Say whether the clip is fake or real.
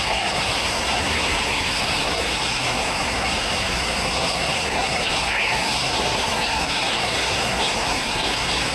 fake